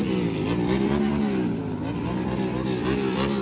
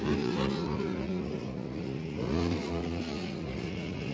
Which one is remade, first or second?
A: second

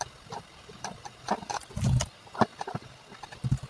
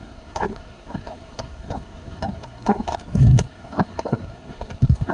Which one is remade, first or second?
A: second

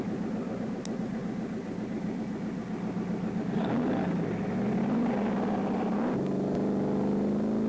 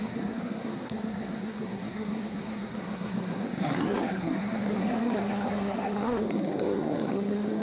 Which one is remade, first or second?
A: second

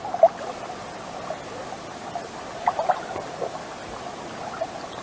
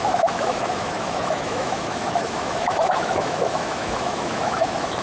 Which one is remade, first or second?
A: second